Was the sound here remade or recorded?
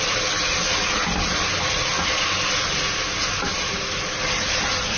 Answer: recorded